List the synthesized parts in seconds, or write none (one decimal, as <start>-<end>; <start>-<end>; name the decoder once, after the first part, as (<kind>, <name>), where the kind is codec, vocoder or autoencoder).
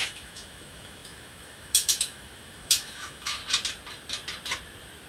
0.0-3.4 (autoencoder, DAC-VAE)